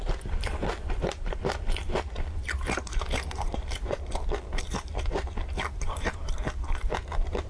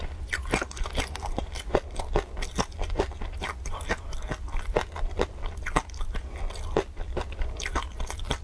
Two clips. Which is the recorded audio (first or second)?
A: second